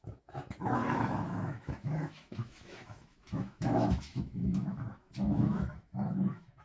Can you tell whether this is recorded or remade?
remade